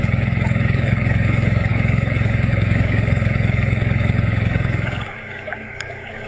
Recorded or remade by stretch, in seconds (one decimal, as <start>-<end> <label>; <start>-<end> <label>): 0.0-6.3 remade